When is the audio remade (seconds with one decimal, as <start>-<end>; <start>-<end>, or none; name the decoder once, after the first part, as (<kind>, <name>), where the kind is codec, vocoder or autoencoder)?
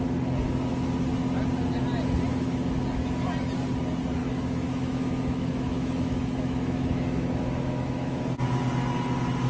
2.3-2.8 (autoencoder, DAC-VAE); 4.2-8.2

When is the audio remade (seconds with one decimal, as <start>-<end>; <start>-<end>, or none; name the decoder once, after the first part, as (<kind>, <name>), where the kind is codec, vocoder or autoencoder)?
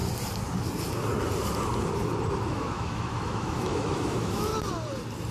2.5-4.5 (autoencoder, DAC-VAE)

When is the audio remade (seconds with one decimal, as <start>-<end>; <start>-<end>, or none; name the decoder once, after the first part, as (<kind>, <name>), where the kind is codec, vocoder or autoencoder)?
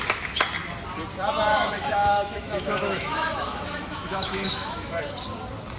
1.5-5.0 (autoencoder, DAC-VAE)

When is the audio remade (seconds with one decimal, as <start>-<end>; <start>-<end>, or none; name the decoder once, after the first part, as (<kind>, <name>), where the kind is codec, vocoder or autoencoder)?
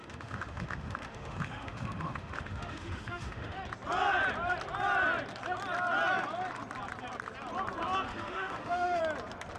0.0-3.6 (autoencoder, DAC-VAE); 8.1-9.0